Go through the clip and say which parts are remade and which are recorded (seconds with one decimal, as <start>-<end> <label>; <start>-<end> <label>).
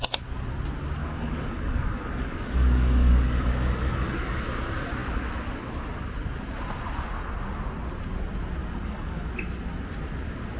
0.0-1.0 recorded; 1.0-4.4 remade; 4.4-8.6 recorded; 8.6-9.3 remade; 9.3-10.6 recorded